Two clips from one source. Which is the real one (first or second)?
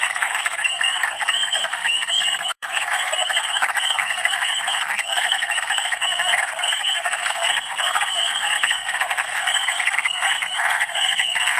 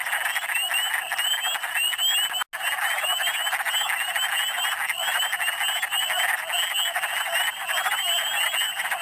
second